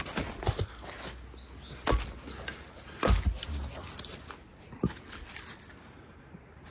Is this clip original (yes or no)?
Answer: yes